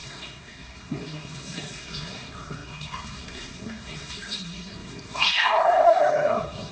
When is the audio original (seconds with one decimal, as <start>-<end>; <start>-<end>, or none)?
none